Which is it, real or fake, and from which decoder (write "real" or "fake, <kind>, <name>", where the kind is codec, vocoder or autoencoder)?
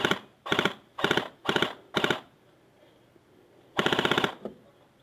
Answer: real